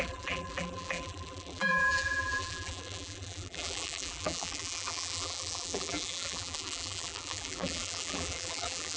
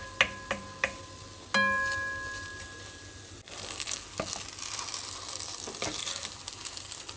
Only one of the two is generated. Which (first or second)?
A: first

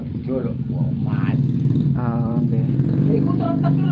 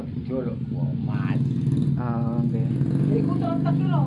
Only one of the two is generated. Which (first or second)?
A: first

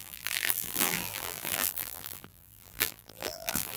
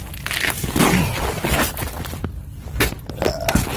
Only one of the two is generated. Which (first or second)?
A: first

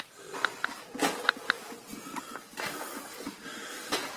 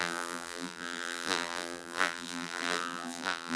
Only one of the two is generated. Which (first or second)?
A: second